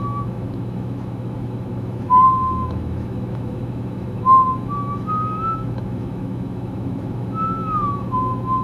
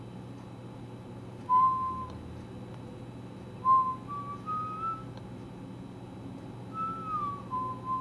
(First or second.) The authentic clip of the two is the second